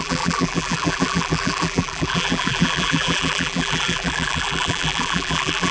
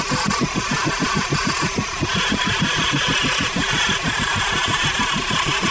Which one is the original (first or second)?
second